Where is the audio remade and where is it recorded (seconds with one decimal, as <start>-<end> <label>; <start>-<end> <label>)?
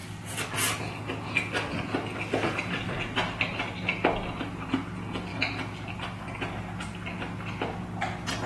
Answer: 0.0-8.5 recorded